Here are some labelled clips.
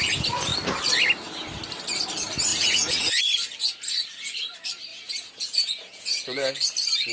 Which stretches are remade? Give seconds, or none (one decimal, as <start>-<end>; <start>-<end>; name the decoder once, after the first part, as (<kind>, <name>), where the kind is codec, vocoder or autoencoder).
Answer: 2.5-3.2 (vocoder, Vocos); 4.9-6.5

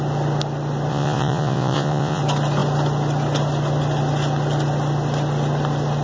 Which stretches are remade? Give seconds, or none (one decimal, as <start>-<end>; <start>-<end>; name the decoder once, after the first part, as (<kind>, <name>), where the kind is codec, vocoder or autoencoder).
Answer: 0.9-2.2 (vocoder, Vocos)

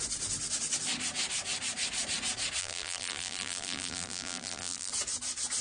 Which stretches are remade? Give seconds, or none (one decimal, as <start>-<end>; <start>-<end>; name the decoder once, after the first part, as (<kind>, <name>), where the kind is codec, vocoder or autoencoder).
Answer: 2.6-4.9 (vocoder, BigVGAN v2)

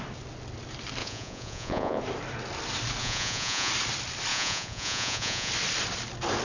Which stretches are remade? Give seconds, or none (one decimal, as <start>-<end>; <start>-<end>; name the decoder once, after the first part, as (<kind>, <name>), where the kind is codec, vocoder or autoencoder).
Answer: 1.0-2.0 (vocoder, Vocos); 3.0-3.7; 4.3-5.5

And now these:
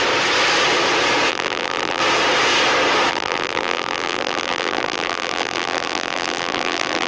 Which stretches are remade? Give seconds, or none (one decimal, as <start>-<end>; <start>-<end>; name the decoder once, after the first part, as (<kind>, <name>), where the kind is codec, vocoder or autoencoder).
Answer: 1.3-2.0 (vocoder, BigVGAN v2); 3.1-7.1

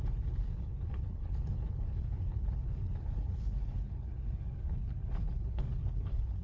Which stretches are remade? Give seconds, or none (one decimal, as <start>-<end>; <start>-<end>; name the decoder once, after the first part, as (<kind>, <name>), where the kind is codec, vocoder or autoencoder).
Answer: 0.0-6.4 (codec, HILCodec)